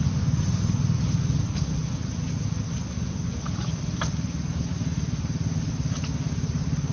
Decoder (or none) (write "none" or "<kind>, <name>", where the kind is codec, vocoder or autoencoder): none